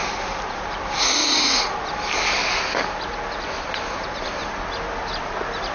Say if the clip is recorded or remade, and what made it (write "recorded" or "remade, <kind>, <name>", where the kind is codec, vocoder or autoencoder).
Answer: recorded